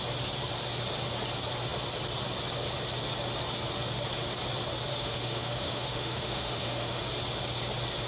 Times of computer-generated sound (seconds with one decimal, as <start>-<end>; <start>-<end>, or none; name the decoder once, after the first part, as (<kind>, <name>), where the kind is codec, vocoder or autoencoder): 4.9-7.0 (autoencoder, DAC-VAE)